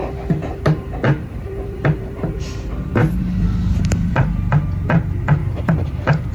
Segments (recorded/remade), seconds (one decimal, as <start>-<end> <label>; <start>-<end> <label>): 0.0-2.4 remade; 2.4-3.0 recorded; 3.0-4.3 remade; 4.3-5.4 recorded; 5.4-6.3 remade